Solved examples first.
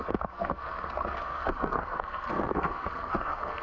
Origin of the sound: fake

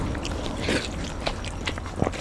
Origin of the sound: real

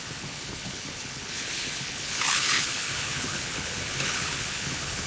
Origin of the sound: fake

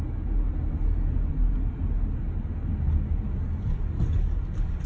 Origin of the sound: real